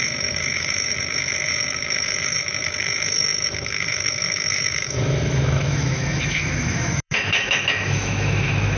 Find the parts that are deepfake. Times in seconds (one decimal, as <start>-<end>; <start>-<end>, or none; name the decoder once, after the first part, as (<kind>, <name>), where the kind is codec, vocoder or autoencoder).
0.0-8.8 (autoencoder, DAC-VAE)